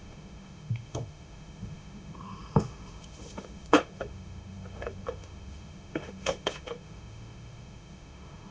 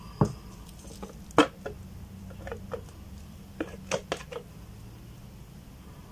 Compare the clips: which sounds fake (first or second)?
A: first